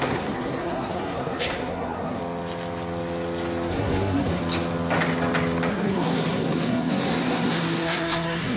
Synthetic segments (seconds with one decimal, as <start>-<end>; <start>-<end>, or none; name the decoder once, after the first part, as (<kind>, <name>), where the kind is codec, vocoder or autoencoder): 0.0-2.2 (codec, SNAC); 3.7-4.4; 5.7-8.6